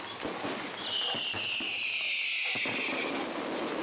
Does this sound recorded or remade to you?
recorded